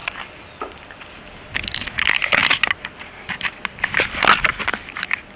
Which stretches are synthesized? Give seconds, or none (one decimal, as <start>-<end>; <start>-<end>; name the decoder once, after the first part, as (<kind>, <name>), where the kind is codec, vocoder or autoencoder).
none